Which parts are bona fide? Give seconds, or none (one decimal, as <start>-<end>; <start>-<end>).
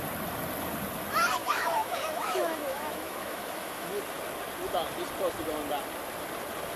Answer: 0.0-1.4; 4.0-6.8